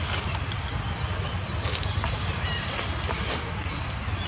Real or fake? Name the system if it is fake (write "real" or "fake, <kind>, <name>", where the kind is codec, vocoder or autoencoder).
real